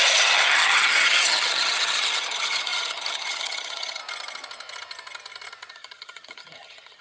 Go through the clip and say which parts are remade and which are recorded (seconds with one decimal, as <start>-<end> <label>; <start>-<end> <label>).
0.0-4.0 remade; 4.0-5.7 recorded; 5.7-7.0 remade